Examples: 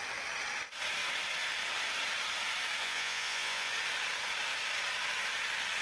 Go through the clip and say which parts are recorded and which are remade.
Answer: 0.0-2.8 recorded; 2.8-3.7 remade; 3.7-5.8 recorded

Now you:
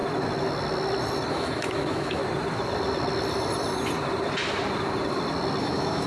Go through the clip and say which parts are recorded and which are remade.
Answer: 0.0-1.3 recorded; 1.3-2.2 remade; 2.2-5.6 recorded; 5.6-6.1 remade

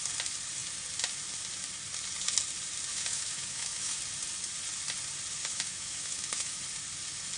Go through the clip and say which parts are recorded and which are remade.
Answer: 0.0-2.9 recorded; 2.9-4.0 remade; 4.0-5.4 recorded; 5.4-6.6 remade; 6.6-7.4 recorded

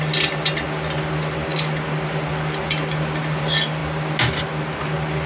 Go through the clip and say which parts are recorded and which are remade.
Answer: 0.0-5.3 recorded

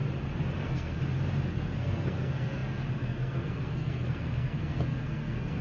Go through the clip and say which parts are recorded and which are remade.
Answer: 0.0-0.6 recorded; 0.6-1.0 remade; 1.0-1.5 recorded; 1.5-5.6 remade

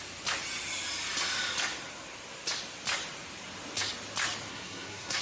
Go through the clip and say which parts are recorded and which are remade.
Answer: 0.0-4.5 recorded; 4.5-5.2 remade

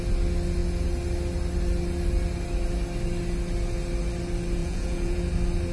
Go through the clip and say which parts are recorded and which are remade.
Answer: 0.0-4.6 recorded; 4.6-5.2 remade; 5.2-5.7 recorded